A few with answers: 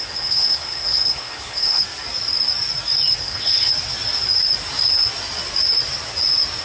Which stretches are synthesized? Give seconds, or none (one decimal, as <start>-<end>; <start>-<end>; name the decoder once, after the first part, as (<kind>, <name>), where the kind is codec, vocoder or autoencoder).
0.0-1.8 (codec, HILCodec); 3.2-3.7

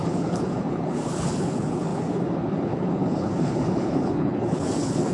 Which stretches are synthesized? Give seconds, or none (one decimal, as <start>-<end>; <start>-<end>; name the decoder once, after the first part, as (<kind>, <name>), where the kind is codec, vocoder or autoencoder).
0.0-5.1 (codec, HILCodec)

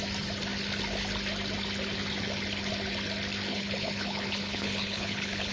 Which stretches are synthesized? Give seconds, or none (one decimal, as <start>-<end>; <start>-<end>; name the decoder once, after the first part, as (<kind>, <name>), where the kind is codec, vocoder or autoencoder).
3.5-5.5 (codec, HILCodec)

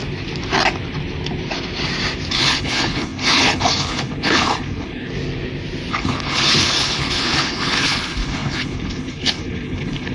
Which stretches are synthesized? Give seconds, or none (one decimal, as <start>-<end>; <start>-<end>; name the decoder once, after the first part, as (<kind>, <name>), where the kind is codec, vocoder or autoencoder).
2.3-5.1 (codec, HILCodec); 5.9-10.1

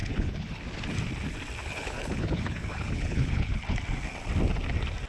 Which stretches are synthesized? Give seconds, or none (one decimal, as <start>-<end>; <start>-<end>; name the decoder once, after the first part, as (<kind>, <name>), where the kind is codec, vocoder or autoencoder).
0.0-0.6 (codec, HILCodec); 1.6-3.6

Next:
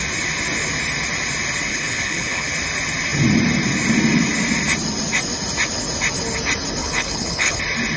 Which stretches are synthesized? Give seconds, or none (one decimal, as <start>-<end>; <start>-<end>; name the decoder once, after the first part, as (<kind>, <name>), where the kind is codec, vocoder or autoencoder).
1.7-2.5 (codec, HILCodec); 6.8-7.6

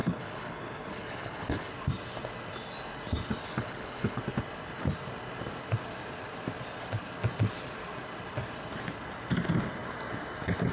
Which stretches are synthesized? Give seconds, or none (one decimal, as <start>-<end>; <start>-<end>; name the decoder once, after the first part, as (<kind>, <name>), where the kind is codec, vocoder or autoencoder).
0.0-1.7 (codec, HILCodec); 3.4-4.2

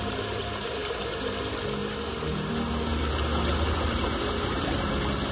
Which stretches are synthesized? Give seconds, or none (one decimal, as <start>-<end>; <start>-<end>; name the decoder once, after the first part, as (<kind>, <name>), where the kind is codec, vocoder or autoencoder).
none